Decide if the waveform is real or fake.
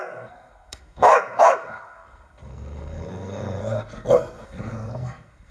fake